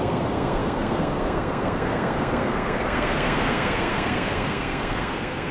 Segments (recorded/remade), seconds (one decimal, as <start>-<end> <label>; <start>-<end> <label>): 0.0-5.5 remade